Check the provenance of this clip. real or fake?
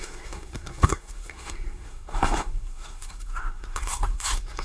fake